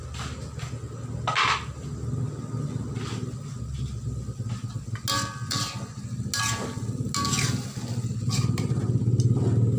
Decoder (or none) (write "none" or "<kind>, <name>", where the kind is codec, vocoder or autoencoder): none